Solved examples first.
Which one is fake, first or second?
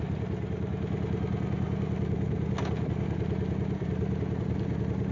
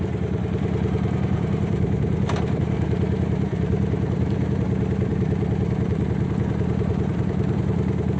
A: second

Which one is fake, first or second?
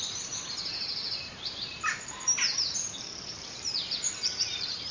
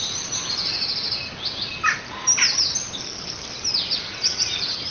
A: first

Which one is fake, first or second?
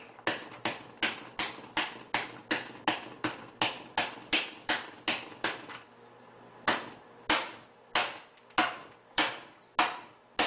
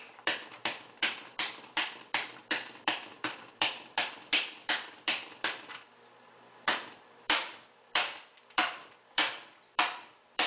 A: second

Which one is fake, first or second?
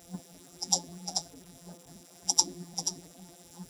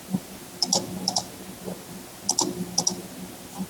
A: first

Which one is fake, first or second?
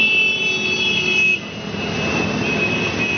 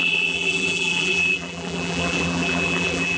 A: second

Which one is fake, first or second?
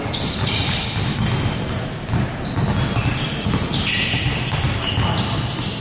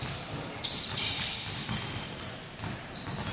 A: second